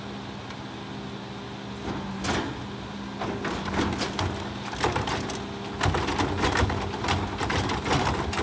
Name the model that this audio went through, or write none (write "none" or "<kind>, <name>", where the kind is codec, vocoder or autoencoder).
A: none